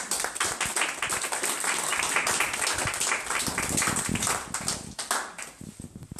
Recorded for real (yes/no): yes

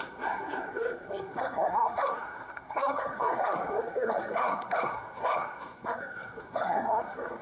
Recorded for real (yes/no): no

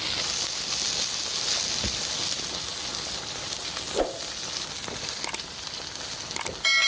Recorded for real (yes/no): yes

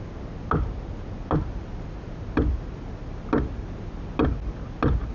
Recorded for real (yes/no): yes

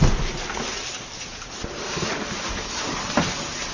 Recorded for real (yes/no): yes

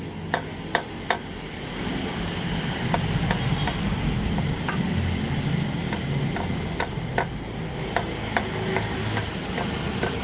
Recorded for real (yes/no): yes